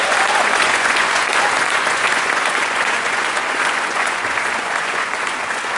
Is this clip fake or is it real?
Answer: fake